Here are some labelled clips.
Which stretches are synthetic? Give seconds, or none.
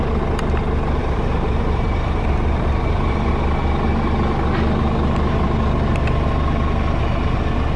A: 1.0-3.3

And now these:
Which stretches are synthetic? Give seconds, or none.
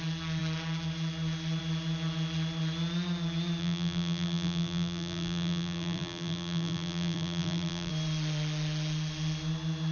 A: 3.6-7.9